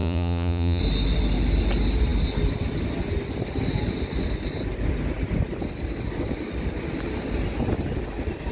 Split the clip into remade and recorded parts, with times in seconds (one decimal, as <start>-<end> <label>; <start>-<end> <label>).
0.0-0.8 remade; 0.8-8.5 recorded